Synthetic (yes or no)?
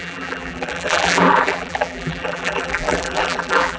yes